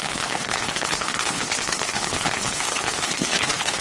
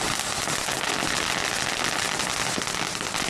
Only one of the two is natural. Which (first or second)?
second